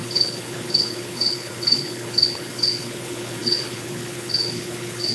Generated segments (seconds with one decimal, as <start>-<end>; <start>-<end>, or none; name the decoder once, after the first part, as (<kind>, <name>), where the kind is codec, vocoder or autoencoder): 0.0-5.1 (codec, HILCodec)